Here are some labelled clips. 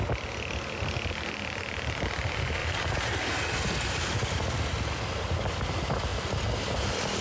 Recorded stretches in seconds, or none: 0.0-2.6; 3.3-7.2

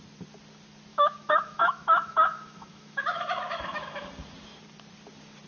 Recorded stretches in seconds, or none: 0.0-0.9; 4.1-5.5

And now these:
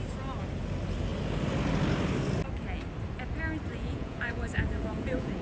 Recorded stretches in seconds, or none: 0.0-3.7

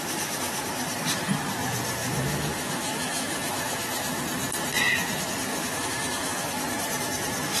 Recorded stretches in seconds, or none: 0.0-2.0; 4.2-5.5; 6.5-7.6

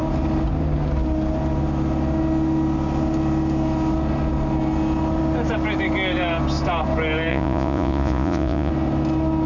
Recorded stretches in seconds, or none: 0.0-7.3; 8.7-9.5